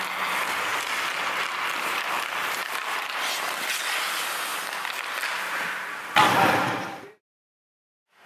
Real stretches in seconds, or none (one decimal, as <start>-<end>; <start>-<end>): 0.0-8.3

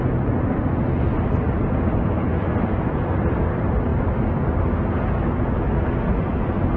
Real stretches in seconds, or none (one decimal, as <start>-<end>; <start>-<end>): 0.0-6.8

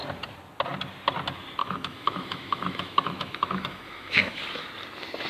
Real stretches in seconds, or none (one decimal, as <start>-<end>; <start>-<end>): 0.0-1.6; 4.4-5.3